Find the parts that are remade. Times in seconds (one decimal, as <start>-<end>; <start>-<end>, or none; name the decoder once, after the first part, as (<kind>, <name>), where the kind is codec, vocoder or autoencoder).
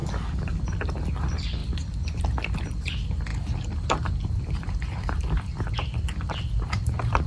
0.0-0.6 (codec, DAC)